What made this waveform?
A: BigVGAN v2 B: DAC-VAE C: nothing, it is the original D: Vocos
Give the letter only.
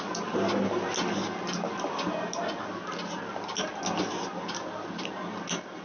C